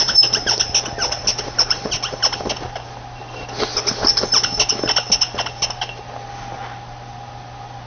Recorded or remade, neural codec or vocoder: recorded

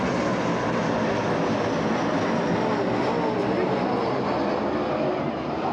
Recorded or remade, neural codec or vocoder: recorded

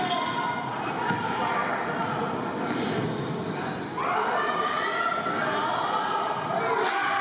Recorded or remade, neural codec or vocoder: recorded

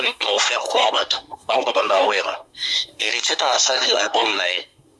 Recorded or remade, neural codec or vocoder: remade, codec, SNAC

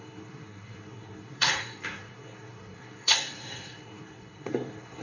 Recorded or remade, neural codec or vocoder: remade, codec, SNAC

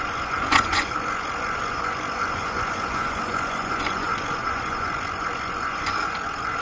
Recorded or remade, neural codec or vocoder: remade, vocoder, Vocos